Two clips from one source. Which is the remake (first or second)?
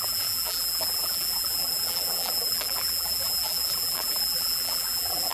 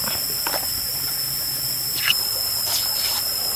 first